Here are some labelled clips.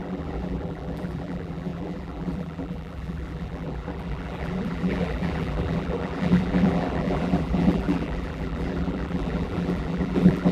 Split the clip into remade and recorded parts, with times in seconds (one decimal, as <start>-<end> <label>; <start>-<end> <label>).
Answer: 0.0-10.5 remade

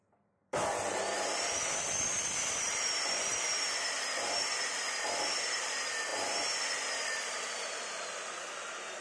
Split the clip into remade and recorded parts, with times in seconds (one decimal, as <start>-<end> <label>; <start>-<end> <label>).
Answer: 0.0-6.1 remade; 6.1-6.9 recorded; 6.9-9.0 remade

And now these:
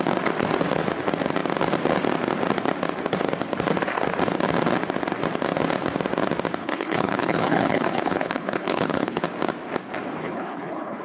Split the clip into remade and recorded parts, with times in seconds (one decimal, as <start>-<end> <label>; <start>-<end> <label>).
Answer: 0.0-6.6 recorded; 6.6-9.2 remade; 9.2-10.2 recorded; 10.2-11.0 remade

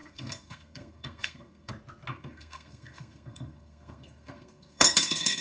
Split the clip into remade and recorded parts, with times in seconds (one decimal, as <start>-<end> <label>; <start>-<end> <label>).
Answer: 0.0-1.7 remade; 1.7-2.1 recorded; 2.1-5.4 remade